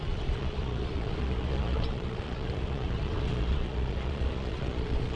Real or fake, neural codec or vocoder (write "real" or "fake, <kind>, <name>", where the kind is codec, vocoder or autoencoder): fake, vocoder, Vocos